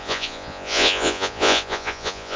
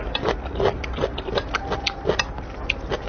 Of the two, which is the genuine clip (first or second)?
second